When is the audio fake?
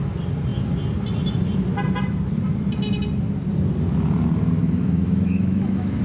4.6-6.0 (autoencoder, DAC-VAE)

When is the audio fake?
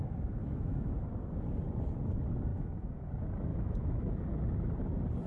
0.4-0.9 (autoencoder, DAC-VAE); 2.5-3.1; 3.5-4.1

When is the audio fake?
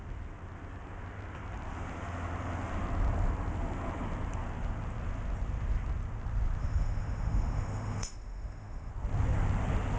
6.6-8.9 (autoencoder, DAC-VAE)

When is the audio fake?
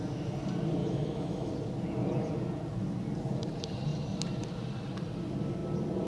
0.8-1.5 (autoencoder, DAC-VAE)